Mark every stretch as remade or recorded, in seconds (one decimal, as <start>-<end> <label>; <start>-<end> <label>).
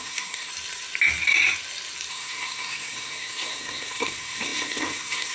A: 0.0-0.5 remade; 0.5-2.1 recorded; 2.1-5.3 remade